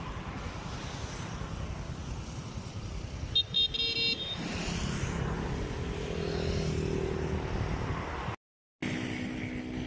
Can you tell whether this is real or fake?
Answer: real